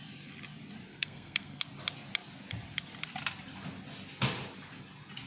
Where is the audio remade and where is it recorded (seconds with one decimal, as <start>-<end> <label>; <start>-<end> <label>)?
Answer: 0.0-0.9 recorded; 0.9-1.6 remade; 1.6-5.3 recorded